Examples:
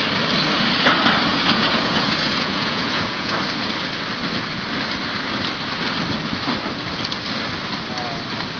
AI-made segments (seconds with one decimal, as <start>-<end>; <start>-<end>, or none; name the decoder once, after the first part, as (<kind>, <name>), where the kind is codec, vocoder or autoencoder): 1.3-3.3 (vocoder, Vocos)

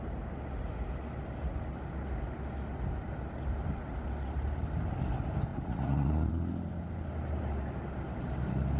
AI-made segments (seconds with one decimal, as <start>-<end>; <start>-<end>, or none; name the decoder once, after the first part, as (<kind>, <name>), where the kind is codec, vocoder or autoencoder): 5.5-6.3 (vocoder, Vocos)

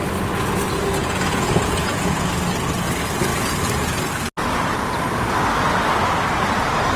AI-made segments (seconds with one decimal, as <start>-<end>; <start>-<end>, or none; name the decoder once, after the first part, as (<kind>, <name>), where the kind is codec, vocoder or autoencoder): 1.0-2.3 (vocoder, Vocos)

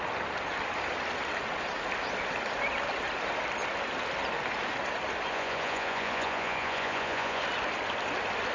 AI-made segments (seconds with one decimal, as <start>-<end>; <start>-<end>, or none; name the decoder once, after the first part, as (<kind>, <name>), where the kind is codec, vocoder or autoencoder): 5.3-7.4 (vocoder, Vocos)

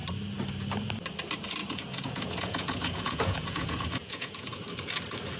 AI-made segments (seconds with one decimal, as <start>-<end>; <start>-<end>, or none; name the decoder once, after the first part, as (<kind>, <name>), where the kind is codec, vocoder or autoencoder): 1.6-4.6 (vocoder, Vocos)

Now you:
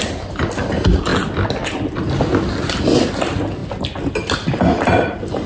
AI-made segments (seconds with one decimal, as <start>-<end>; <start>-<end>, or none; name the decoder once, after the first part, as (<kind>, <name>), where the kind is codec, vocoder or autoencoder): none

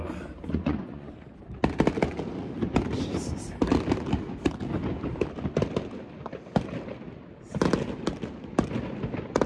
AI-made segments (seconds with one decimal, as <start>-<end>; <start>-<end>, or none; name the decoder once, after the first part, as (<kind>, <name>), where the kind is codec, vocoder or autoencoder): 0.5-1.1 (vocoder, Vocos)